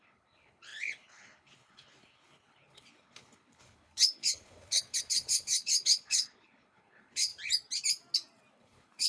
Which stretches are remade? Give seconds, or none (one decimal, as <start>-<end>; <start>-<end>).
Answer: 0.0-7.3; 8.5-9.1